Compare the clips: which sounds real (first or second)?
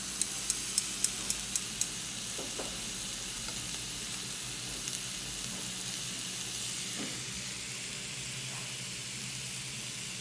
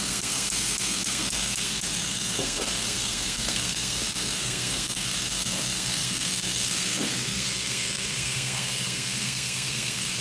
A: first